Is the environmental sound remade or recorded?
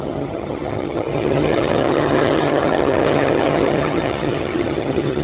remade